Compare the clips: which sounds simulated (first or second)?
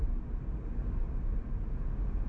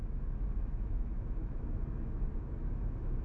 second